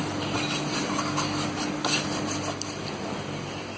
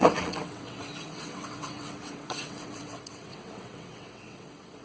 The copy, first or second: second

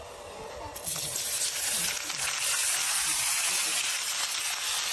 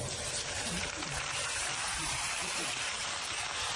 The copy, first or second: second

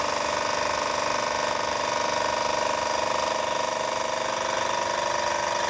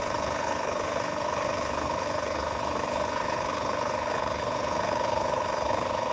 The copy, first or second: second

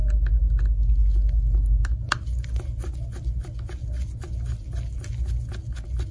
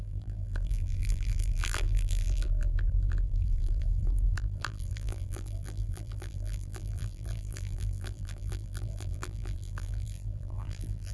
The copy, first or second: second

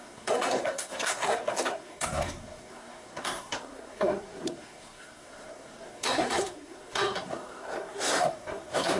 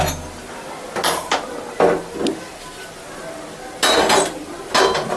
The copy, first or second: first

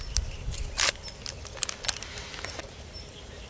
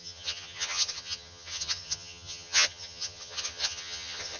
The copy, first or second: second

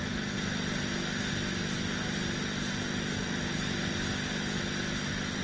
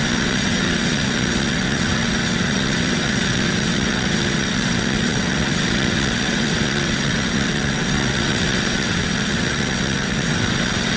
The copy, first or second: second